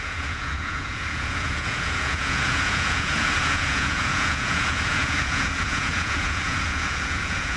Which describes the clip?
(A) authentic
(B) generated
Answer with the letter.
B